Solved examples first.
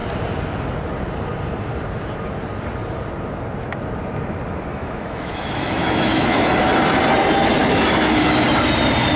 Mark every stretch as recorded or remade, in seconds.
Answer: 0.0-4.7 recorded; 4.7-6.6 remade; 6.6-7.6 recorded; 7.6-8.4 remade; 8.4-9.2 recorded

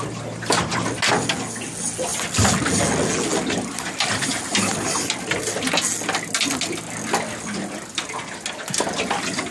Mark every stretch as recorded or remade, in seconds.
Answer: 0.0-9.5 recorded

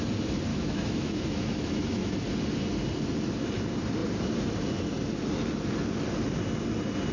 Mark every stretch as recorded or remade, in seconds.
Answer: 0.0-0.5 recorded; 0.5-2.1 remade; 2.1-7.1 recorded

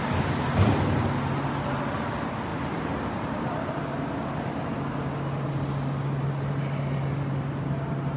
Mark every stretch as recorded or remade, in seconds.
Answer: 0.0-8.2 recorded

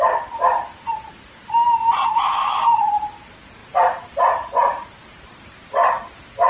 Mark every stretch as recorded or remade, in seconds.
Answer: 0.0-2.1 recorded; 2.1-2.8 remade; 2.8-6.5 recorded

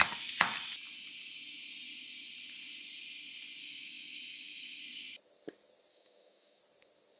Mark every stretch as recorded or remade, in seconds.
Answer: 0.0-3.6 recorded; 3.6-4.8 remade; 4.8-5.9 recorded; 5.9-6.6 remade; 6.6-7.2 recorded

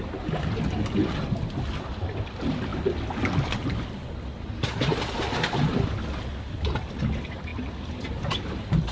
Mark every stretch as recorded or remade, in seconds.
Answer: 0.0-8.9 recorded

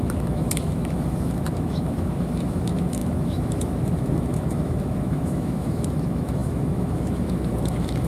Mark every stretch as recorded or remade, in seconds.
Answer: 0.0-8.1 remade